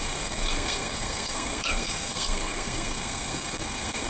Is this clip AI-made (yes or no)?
yes